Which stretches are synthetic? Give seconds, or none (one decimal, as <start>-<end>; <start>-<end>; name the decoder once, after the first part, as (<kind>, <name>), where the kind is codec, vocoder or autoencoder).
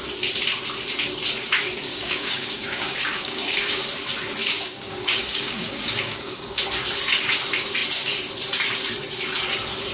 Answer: 1.9-3.8 (codec, DAC); 4.4-6.6